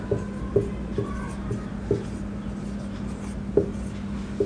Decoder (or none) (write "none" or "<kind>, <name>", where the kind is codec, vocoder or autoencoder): none